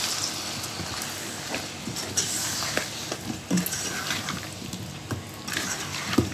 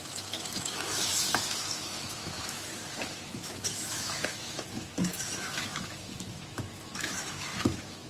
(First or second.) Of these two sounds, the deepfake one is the second